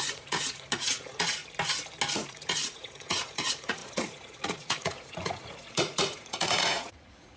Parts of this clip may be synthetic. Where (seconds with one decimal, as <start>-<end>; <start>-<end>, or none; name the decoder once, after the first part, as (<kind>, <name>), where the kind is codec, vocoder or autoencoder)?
0.0-1.4 (vocoder, Vocos); 2.1-7.4